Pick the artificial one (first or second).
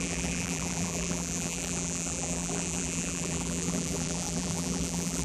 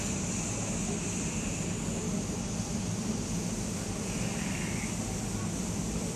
first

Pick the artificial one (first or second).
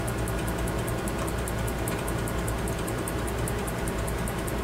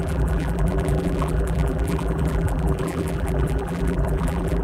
second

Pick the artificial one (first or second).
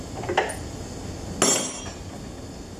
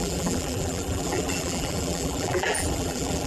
second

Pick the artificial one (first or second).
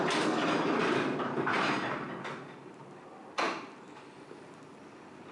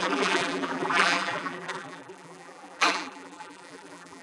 second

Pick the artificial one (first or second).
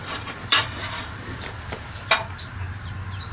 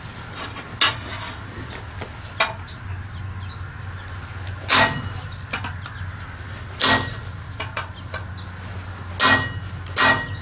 first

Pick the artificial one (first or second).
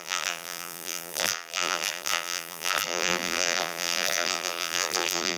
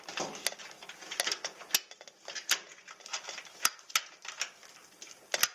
first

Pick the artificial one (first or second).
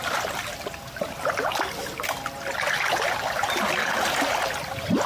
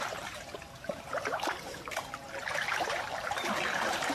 second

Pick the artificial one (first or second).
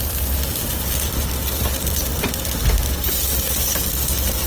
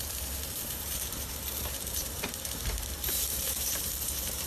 second